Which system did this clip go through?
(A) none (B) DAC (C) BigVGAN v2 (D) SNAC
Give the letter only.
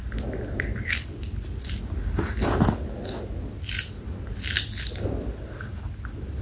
A